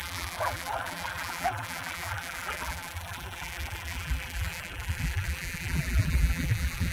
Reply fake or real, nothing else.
fake